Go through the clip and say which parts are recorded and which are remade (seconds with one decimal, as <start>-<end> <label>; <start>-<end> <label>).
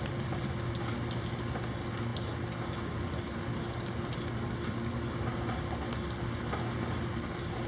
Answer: 0.0-7.7 recorded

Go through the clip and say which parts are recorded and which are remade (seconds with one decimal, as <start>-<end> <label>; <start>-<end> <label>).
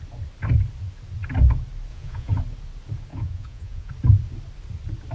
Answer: 0.0-1.9 recorded; 1.9-2.4 remade; 2.4-3.1 recorded; 3.1-3.9 remade; 3.9-5.1 recorded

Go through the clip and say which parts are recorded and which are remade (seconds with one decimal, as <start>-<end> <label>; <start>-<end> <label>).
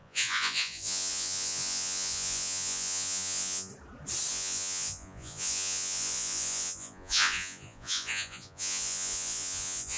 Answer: 0.0-3.7 remade; 3.7-4.3 recorded; 4.3-10.0 remade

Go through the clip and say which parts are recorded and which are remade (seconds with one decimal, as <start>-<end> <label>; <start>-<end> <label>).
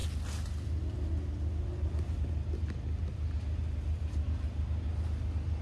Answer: 0.0-5.6 recorded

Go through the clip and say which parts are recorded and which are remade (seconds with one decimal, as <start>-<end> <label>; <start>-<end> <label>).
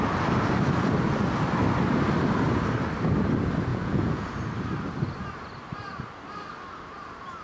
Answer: 0.0-3.7 recorded; 3.7-4.3 remade; 4.3-7.4 recorded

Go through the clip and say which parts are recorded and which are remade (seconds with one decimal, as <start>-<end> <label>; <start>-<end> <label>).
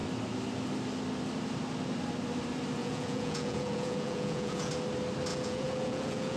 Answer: 0.0-2.8 recorded; 2.8-4.7 remade; 4.7-5.3 recorded; 5.3-6.4 remade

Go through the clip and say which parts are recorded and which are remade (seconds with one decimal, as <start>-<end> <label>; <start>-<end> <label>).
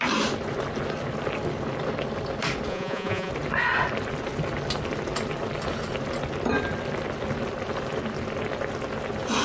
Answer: 0.0-2.7 recorded; 2.7-3.3 remade; 3.3-9.4 recorded